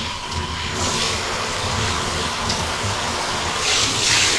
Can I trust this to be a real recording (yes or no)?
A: no